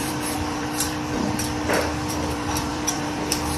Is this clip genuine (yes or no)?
no